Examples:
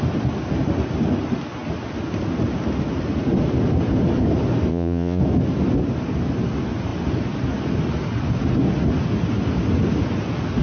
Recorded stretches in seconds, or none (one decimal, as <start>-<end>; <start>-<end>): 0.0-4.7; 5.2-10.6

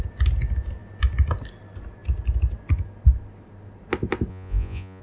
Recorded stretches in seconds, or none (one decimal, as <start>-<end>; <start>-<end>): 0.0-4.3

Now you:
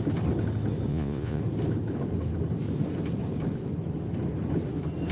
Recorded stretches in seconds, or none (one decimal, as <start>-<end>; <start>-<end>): 0.0-0.9; 1.4-5.1

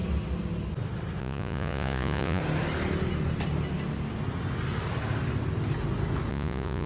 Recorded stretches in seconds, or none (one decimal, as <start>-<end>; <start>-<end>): 0.0-1.2; 2.4-6.3

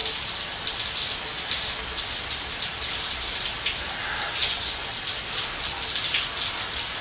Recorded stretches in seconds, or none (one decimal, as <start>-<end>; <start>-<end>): 0.0-4.4; 4.9-7.0

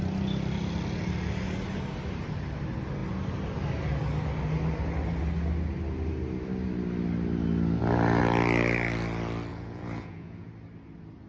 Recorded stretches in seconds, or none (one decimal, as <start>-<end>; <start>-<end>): 0.0-9.5; 10.5-11.3

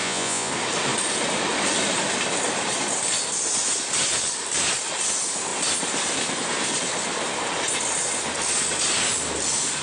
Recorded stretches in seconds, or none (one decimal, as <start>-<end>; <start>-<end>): 0.5-9.8

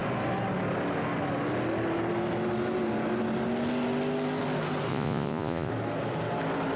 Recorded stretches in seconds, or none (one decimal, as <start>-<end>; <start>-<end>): 0.0-4.9; 5.7-6.8